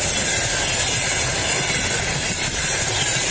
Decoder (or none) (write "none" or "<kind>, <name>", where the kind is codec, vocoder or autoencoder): none